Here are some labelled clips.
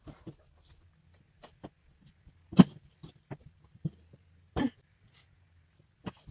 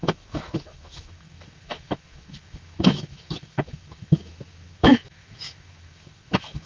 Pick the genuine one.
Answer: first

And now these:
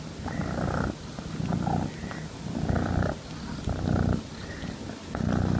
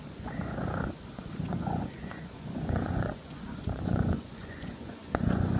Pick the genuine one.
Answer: first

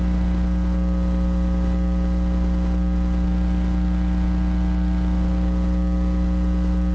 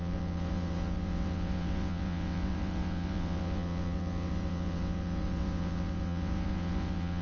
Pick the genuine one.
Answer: first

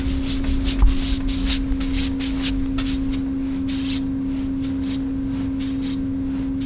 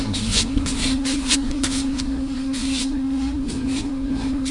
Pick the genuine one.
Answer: first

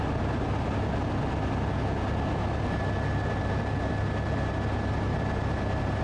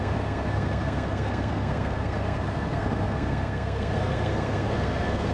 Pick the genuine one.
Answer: first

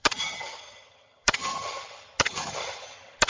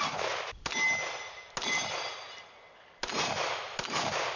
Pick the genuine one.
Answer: second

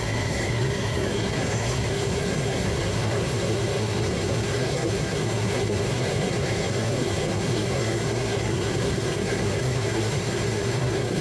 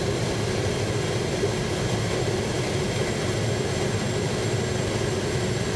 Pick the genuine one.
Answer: second